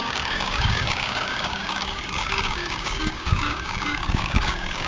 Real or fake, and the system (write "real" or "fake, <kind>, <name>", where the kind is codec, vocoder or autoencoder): fake, codec, DAC